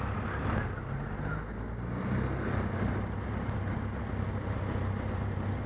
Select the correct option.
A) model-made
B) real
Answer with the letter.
B